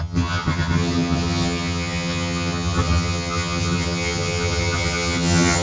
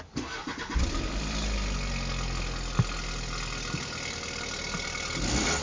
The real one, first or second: second